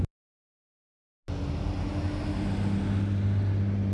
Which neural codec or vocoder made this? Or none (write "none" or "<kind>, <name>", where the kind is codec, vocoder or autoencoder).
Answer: none